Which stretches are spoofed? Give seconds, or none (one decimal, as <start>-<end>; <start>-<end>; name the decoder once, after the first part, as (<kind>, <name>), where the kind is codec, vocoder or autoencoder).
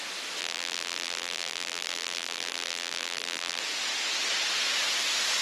0.4-3.6 (vocoder, BigVGAN v2)